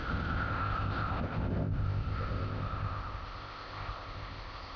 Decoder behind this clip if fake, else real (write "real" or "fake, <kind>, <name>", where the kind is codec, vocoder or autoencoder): fake, codec, ZipCodec